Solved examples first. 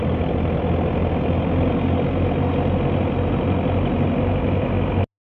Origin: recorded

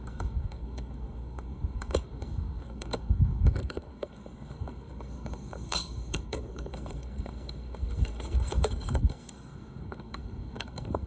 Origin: remade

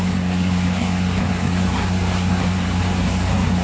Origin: remade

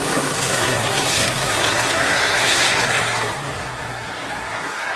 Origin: remade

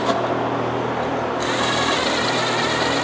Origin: recorded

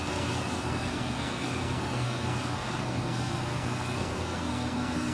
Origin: remade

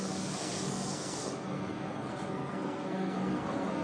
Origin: remade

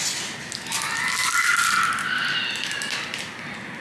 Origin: recorded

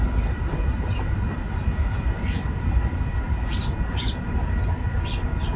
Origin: recorded